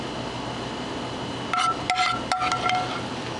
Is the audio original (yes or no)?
yes